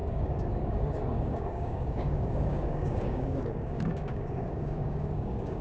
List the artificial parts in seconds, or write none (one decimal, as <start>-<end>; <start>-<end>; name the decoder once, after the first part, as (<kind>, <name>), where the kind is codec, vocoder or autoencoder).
0.0-5.6 (codec, DAC)